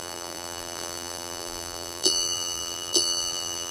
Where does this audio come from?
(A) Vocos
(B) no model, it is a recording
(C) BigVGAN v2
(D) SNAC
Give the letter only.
C